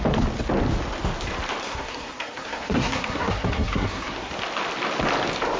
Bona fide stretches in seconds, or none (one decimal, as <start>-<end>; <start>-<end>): 0.0-1.6; 4.3-5.6